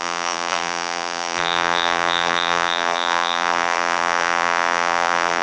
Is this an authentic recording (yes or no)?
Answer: no